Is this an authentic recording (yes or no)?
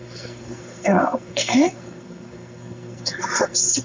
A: no